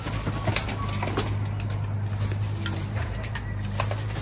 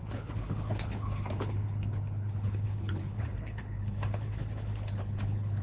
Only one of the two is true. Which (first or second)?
first